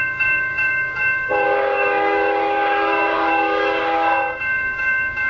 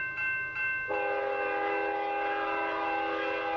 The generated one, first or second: first